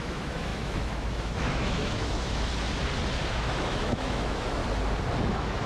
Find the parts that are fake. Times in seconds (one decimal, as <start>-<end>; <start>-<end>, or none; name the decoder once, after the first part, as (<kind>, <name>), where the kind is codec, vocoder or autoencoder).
0.0-2.5 (autoencoder, DAC-VAE); 3.3-4.6; 5.3-5.7